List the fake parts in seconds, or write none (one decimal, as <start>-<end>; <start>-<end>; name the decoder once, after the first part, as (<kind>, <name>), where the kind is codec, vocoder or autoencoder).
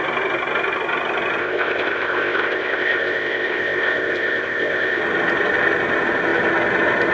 1.4-5.0 (codec, ZipCodec)